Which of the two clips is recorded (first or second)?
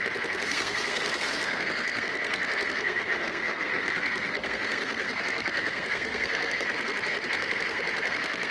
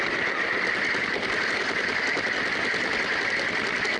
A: second